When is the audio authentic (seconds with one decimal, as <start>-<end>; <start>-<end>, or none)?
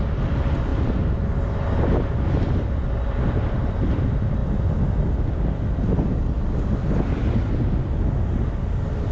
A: 0.0-9.1